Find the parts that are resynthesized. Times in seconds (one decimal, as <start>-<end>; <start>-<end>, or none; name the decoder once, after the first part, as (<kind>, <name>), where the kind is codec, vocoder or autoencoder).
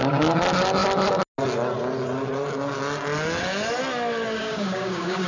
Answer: 4.4-5.3 (codec, DAC)